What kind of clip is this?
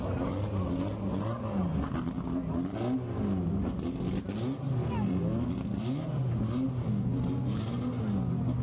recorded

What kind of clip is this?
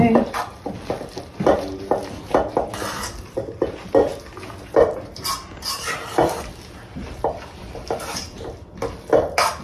recorded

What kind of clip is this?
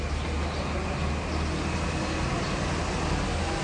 recorded